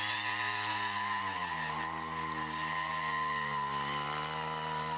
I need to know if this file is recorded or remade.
recorded